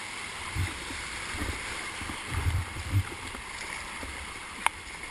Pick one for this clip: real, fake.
fake